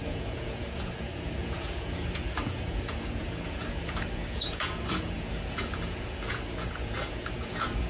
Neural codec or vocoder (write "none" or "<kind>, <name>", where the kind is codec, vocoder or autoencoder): vocoder, Vocos